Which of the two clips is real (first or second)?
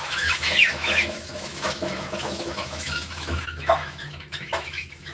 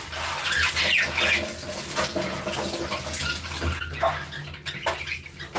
second